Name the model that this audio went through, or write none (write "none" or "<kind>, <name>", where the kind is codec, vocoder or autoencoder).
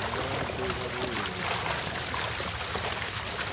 none